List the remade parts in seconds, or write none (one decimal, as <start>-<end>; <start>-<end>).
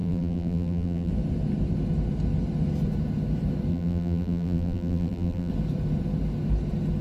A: 0.0-1.1; 3.7-5.5